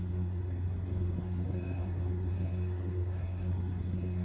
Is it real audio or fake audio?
fake